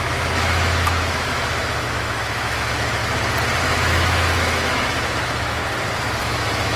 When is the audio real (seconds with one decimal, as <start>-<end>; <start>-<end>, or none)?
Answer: 3.0-3.6; 5.6-6.2